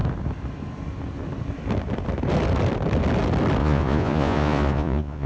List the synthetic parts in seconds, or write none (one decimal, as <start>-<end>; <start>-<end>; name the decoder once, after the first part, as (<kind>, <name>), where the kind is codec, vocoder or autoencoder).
3.6-5.3 (vocoder, Vocos)